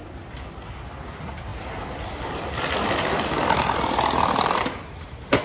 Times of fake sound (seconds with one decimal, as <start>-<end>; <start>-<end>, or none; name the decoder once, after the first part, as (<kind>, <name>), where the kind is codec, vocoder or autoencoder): none